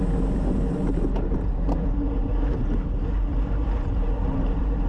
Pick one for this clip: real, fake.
real